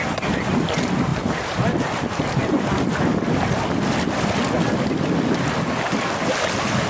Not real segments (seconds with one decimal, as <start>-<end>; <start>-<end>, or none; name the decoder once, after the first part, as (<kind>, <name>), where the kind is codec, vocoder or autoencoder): none